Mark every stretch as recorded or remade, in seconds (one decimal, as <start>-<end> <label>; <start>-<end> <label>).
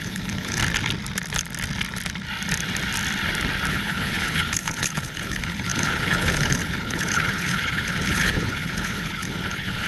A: 0.0-0.6 remade; 0.6-3.7 recorded; 3.7-9.9 remade